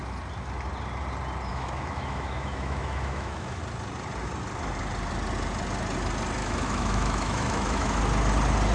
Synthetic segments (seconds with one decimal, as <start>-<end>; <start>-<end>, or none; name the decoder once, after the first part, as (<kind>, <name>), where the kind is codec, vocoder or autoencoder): 1.5-3.6 (autoencoder, DAC-VAE); 6.4-8.0